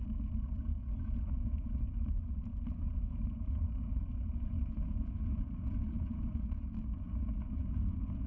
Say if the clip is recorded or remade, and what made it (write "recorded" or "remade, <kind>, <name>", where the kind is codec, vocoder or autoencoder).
remade, vocoder, Vocos